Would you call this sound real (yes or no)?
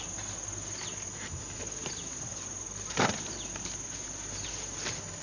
yes